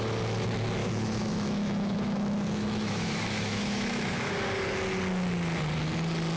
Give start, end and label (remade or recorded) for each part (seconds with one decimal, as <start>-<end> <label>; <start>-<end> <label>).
0.0-0.8 recorded; 0.8-4.3 remade; 4.3-6.4 recorded